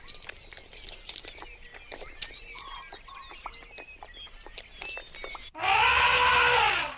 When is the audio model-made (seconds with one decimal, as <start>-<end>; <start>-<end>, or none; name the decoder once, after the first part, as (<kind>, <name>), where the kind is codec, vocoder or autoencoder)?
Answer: none